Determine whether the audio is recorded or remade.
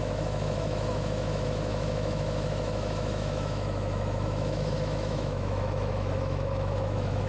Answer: remade